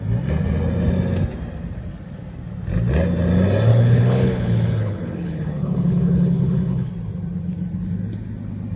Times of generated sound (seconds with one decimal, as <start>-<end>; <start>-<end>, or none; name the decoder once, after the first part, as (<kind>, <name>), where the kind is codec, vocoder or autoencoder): 3.7-6.9 (codec, HILCodec)